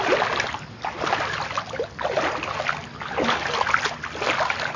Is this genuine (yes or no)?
yes